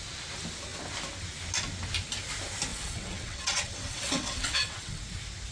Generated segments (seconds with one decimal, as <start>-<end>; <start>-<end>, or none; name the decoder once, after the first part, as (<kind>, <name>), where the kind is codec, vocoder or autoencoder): 2.7-5.0 (vocoder, WaveNeXt)